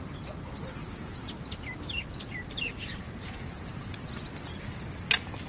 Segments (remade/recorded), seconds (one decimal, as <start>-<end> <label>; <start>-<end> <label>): 0.0-0.8 recorded; 0.8-4.1 remade; 4.1-5.5 recorded